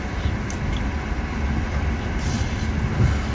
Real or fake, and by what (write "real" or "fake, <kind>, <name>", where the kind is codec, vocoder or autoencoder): real